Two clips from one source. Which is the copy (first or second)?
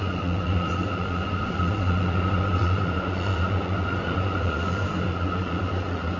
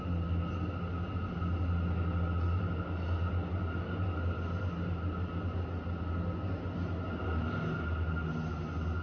first